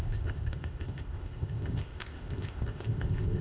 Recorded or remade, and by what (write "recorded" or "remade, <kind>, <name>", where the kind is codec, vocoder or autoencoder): remade, codec, ZipCodec